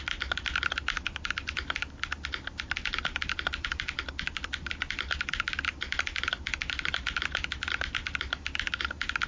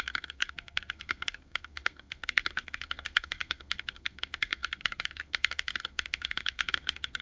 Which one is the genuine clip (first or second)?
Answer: first